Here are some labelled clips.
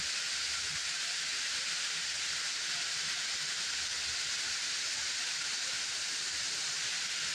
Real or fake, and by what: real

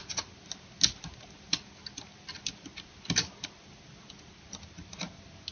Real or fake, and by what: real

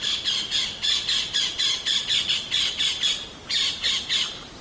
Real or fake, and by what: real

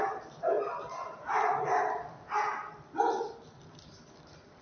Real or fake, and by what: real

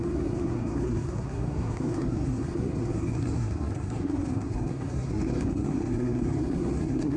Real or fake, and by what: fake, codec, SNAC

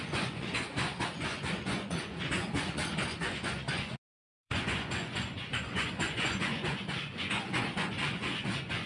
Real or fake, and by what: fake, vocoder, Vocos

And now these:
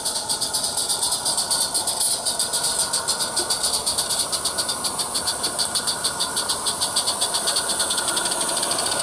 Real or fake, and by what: real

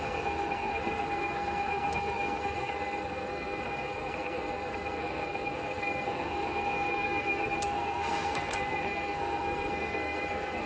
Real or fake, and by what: fake, codec, SNAC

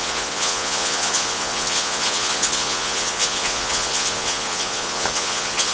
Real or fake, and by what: fake, vocoder, Vocos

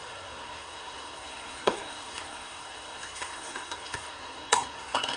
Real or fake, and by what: fake, codec, SNAC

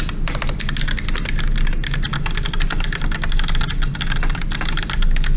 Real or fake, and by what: real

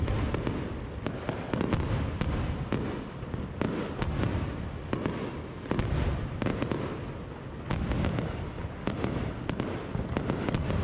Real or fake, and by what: real